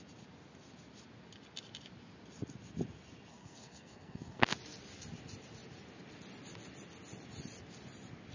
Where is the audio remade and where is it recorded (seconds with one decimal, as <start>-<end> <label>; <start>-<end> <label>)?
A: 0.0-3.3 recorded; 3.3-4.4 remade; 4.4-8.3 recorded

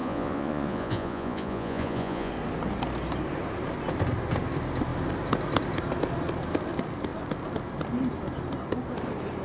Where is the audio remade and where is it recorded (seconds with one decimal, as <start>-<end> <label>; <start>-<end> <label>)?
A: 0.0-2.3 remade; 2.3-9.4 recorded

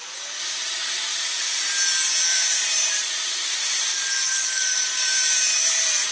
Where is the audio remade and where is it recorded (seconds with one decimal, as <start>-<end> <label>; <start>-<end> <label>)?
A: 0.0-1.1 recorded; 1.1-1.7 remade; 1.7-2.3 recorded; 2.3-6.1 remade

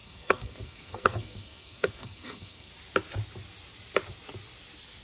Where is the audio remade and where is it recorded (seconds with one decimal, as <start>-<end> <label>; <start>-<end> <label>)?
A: 0.0-2.7 remade; 2.7-5.0 recorded